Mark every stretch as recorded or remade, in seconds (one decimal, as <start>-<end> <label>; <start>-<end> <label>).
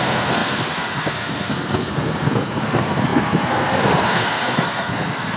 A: 0.0-5.4 remade